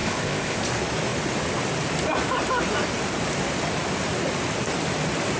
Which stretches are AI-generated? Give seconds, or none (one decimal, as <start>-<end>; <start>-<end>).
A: 0.0-0.6